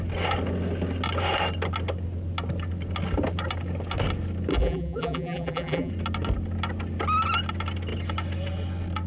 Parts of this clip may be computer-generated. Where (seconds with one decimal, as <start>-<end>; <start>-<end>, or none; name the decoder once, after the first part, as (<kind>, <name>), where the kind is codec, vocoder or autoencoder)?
4.5-5.9 (vocoder, BigVGAN v2)